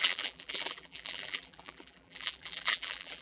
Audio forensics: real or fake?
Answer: fake